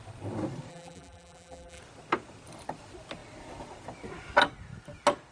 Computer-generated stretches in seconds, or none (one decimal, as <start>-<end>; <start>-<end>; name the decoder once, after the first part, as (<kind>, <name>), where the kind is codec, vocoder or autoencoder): 0.7-1.8 (vocoder, BigVGAN v2)